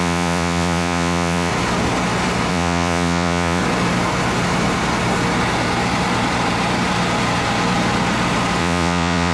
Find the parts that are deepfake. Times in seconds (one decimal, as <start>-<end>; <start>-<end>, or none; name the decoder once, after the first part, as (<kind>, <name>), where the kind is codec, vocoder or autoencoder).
0.0-1.5 (vocoder, Vocos); 2.5-3.6; 8.6-9.3

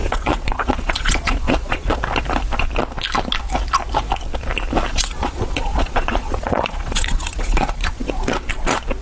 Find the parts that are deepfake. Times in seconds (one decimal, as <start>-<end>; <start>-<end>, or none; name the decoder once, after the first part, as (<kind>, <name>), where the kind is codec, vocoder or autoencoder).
0.0-2.0 (vocoder, Vocos); 4.9-8.1

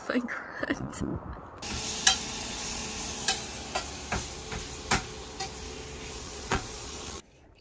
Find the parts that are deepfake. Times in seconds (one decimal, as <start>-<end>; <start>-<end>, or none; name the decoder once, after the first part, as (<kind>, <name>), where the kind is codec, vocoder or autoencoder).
0.0-1.1 (vocoder, Vocos); 2.4-2.8; 6.1-7.6

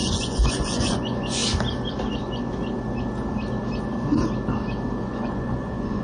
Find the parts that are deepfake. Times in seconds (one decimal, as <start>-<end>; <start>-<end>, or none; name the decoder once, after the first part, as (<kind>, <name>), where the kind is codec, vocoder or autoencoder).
0.0-1.4 (vocoder, Vocos); 5.0-6.0

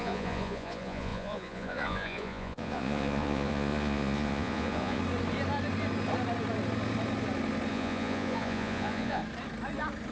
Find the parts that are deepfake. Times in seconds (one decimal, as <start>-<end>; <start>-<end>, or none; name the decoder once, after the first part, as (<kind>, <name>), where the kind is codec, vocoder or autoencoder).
0.0-5.0 (vocoder, Vocos); 7.7-9.2

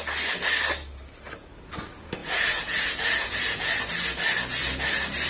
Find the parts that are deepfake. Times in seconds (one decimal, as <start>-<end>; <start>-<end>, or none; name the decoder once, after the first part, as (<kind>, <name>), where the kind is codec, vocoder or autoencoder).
2.2-3.8 (vocoder, Vocos)